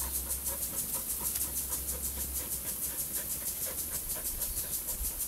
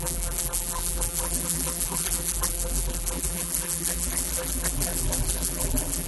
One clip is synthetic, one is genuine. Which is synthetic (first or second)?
second